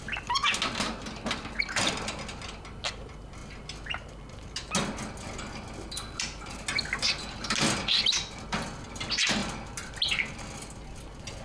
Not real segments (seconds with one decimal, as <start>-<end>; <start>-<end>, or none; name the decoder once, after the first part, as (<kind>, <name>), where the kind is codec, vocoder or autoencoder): none